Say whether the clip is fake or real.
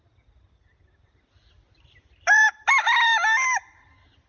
real